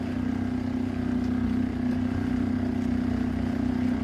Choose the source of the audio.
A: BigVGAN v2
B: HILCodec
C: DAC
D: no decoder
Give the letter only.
D